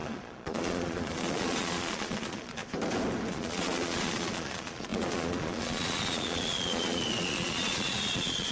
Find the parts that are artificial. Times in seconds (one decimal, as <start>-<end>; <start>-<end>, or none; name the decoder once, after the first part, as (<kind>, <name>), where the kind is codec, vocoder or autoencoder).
0.0-2.6 (vocoder, Vocos); 3.3-8.5